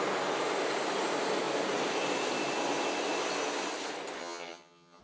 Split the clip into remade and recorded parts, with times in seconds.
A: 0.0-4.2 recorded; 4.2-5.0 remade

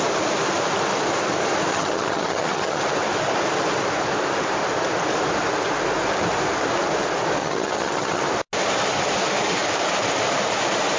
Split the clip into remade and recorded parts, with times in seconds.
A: 0.0-1.7 recorded; 1.7-2.8 remade; 2.8-7.4 recorded; 7.4-8.2 remade; 8.2-11.0 recorded

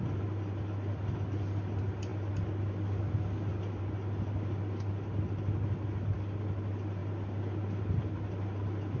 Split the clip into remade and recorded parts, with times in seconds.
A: 0.0-9.0 recorded

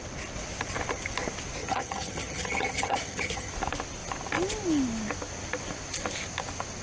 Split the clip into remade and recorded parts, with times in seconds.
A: 0.0-1.6 recorded; 1.6-3.5 remade; 3.5-6.8 recorded